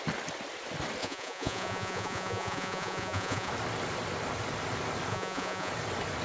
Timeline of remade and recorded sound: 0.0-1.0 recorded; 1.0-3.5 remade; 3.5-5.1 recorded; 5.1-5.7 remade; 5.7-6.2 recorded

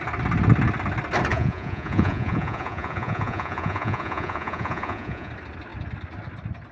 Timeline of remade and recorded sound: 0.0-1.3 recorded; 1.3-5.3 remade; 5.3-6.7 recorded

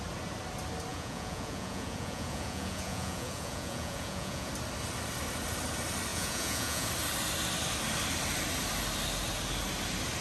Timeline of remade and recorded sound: 0.0-0.9 recorded; 0.9-4.5 remade; 4.5-6.1 recorded; 6.1-6.9 remade; 6.9-10.2 recorded